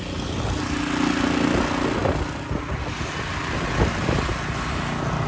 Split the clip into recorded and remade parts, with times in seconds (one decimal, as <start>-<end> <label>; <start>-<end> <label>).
0.0-5.3 recorded